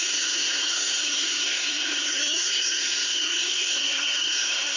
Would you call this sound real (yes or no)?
no